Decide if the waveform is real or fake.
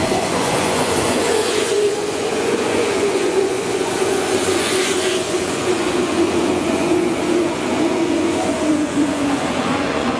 fake